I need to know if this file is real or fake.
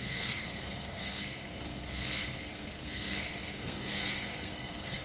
fake